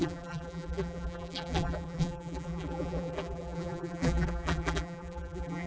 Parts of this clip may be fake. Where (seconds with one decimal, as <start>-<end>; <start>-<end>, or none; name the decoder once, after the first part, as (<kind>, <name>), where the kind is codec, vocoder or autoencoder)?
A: 0.0-5.7 (vocoder, BigVGAN v2)